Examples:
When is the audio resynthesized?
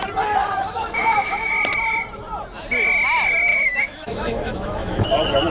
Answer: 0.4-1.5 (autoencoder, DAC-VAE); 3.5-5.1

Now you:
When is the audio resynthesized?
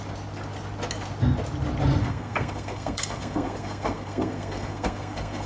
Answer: 2.0-5.5 (codec, SNAC)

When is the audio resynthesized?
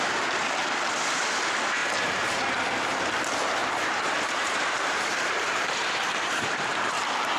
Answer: 1.8-2.4 (vocoder, BigVGAN v2); 3.6-7.4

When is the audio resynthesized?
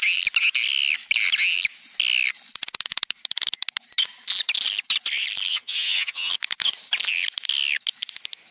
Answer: 5.5-6.3 (vocoder, HiFi-GAN)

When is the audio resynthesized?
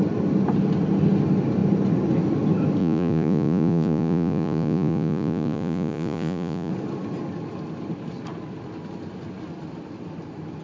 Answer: 2.8-6.7 (vocoder, Vocos)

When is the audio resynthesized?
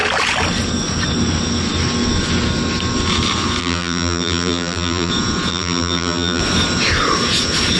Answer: 3.6-5.1 (vocoder, BigVGAN v2); 5.5-6.4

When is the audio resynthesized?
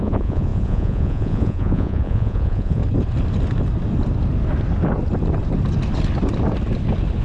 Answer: 0.0-2.8 (vocoder, Vocos)